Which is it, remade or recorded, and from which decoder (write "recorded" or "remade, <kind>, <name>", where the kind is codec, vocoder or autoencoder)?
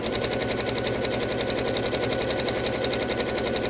recorded